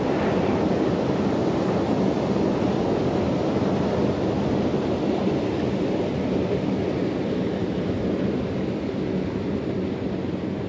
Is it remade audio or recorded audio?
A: recorded